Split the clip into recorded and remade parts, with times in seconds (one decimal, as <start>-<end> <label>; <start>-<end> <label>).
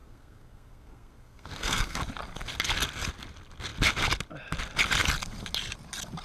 0.0-2.0 remade; 2.0-6.2 recorded